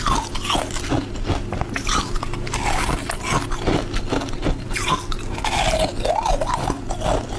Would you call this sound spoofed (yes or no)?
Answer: no